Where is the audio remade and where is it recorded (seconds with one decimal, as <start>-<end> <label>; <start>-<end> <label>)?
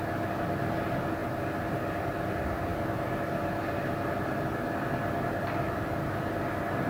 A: 0.0-6.9 recorded